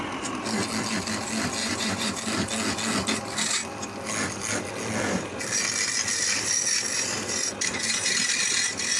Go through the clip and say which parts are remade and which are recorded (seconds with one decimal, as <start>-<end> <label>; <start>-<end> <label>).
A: 0.0-1.6 recorded; 1.6-2.1 remade; 2.1-9.0 recorded